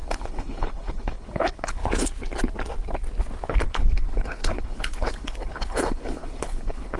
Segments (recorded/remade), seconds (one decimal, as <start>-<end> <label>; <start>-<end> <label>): 0.0-1.8 remade; 1.8-3.5 recorded; 3.5-7.0 remade